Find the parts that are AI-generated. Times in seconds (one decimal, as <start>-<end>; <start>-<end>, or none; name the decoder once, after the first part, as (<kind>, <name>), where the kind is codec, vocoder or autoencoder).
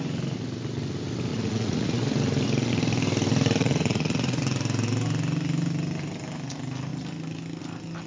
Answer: 1.3-2.0 (vocoder, Vocos); 3.6-4.4